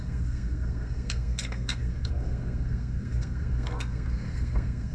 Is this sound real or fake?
fake